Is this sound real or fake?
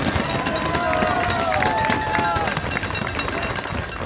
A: real